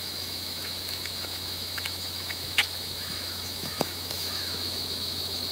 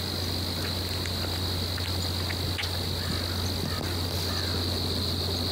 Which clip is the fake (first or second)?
first